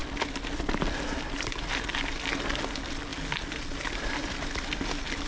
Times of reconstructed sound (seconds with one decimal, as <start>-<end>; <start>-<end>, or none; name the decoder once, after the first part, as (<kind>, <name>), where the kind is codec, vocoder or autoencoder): none